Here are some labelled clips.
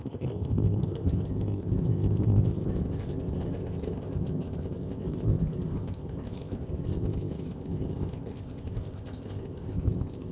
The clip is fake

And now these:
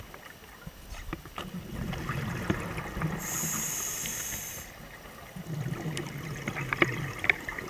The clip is real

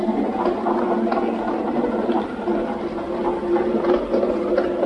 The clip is real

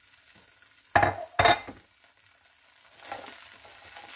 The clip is real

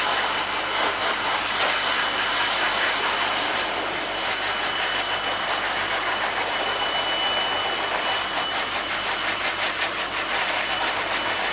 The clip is real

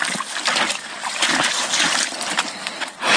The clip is real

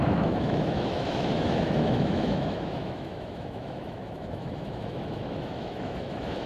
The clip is fake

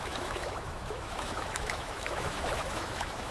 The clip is fake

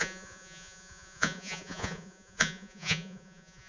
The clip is fake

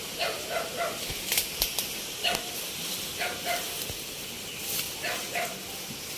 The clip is real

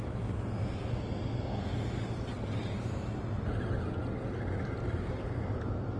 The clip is real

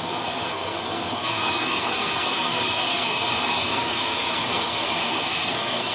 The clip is fake